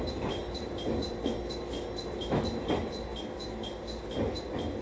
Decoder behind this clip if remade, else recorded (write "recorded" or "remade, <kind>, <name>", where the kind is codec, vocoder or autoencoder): recorded